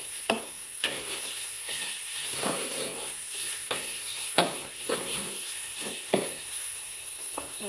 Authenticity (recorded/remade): remade